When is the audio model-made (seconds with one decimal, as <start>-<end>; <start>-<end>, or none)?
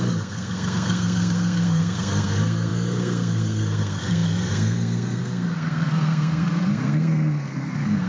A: 0.0-8.1